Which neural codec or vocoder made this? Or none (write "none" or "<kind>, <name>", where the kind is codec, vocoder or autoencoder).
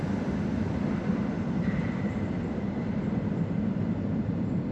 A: none